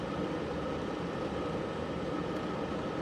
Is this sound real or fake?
real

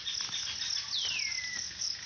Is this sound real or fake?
real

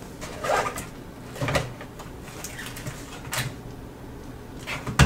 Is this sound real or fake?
real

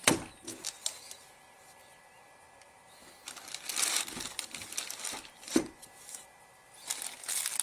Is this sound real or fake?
real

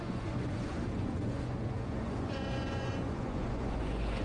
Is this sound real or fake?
fake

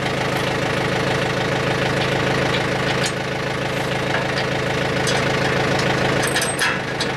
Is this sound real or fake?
real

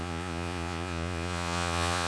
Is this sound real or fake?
fake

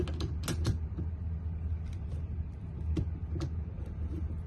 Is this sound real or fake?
real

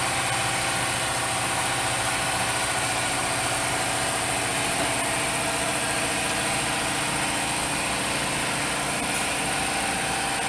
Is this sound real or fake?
real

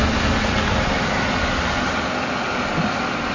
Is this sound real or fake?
real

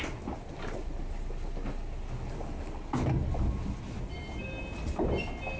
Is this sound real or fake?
real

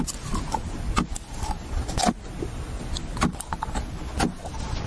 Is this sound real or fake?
real